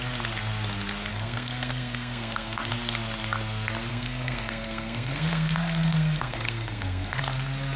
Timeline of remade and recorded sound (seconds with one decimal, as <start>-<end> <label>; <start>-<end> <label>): 0.0-1.1 recorded; 1.1-2.7 remade; 2.7-3.9 recorded; 3.9-7.2 remade; 7.2-7.8 recorded